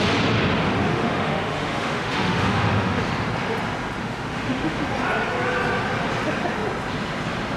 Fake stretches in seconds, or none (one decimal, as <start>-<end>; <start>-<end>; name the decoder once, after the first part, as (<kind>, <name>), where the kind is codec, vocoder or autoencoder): 0.9-3.0 (autoencoder, DAC-VAE); 4.0-4.8